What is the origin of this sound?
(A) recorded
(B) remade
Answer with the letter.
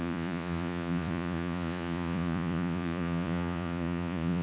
B